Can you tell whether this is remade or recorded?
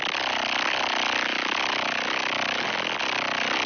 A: recorded